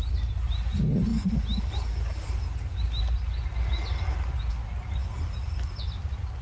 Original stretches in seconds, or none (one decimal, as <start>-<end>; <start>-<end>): 0.0-6.4